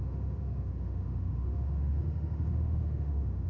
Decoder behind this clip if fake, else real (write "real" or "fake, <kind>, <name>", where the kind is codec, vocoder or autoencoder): fake, autoencoder, DAC-VAE